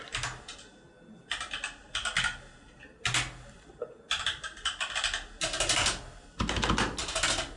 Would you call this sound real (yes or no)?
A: yes